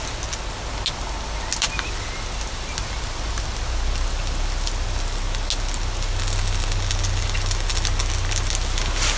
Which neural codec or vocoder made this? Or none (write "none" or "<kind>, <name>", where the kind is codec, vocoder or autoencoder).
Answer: none